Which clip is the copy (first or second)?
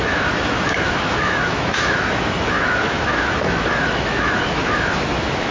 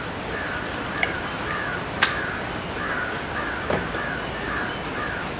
first